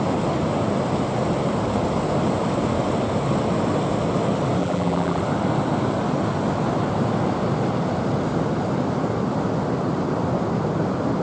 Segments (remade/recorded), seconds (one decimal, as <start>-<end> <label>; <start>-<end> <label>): 0.0-4.6 recorded; 4.6-5.2 remade; 5.2-11.2 recorded